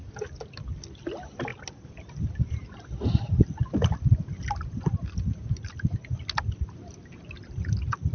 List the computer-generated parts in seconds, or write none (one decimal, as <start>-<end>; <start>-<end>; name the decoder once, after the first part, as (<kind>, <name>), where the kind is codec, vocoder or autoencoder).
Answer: none